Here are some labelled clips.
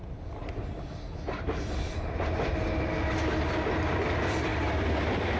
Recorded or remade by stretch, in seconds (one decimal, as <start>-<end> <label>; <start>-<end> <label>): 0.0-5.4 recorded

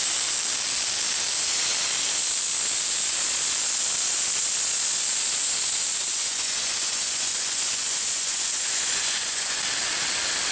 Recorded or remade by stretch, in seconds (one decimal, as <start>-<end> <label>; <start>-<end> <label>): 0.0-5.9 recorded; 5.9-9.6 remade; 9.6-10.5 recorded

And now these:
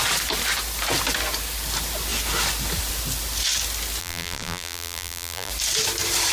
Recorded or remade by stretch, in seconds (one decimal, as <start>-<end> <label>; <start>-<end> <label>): 0.0-4.0 recorded; 4.0-5.5 remade; 5.5-6.3 recorded

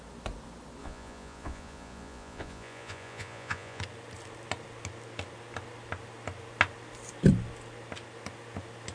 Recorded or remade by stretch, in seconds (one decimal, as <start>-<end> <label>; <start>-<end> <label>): 0.0-0.8 recorded; 0.8-3.8 remade; 3.8-8.9 recorded

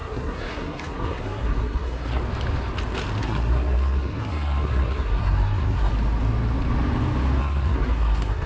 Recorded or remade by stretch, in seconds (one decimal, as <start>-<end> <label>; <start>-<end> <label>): 0.0-2.2 remade; 2.2-3.2 recorded; 3.2-5.9 remade; 5.9-7.4 recorded; 7.4-8.5 remade